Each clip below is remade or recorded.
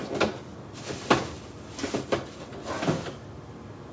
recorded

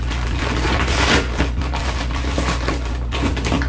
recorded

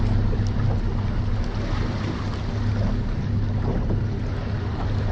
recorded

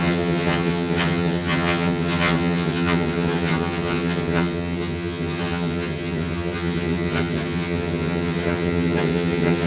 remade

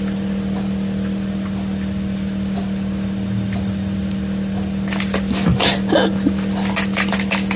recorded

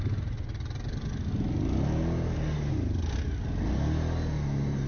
recorded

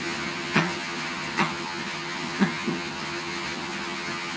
remade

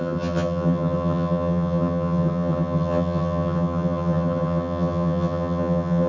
remade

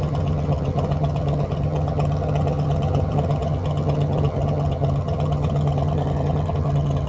remade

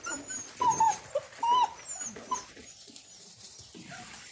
recorded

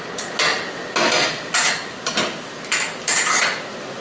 recorded